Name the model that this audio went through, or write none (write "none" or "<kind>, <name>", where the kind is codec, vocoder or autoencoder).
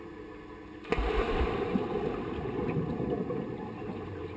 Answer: none